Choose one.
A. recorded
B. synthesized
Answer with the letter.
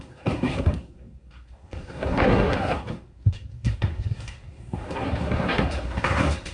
B